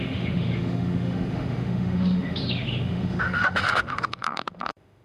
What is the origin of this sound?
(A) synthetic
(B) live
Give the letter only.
A